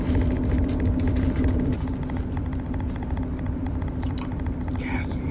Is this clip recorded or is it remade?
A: recorded